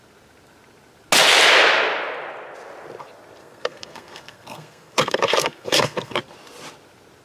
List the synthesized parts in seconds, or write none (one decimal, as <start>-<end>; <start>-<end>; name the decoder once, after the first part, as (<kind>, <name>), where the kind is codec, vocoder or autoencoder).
3.4-6.2 (codec, SNAC)